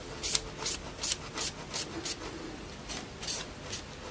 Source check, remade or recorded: recorded